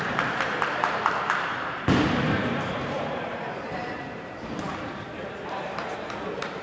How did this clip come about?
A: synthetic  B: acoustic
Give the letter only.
A